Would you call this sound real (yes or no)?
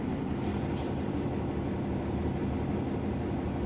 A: yes